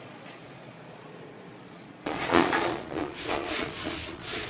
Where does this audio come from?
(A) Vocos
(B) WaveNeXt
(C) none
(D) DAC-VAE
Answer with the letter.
A